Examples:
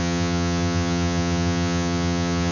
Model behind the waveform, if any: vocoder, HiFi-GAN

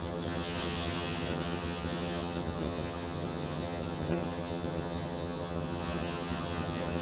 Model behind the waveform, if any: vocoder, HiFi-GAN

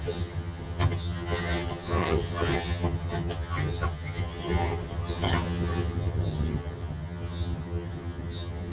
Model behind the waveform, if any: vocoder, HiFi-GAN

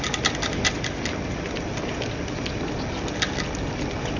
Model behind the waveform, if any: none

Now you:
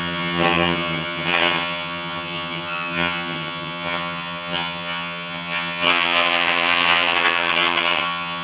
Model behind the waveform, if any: vocoder, HiFi-GAN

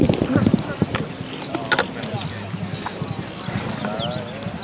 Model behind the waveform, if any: none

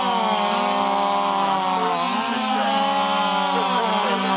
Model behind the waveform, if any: none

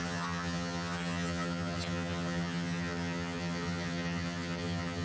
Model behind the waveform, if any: vocoder, HiFi-GAN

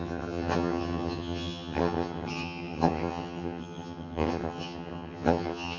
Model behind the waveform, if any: vocoder, HiFi-GAN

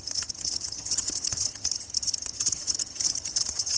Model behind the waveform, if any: vocoder, HiFi-GAN